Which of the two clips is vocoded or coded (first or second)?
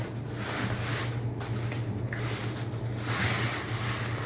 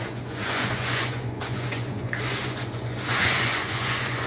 second